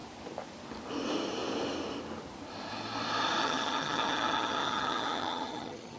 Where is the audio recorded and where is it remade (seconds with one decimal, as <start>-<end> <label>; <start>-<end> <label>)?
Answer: 0.0-3.4 recorded; 3.4-6.0 remade